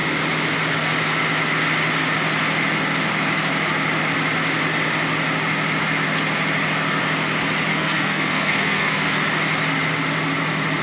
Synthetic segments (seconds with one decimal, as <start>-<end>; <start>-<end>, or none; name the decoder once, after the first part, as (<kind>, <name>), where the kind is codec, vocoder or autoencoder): 7.7-9.2 (codec, SNAC)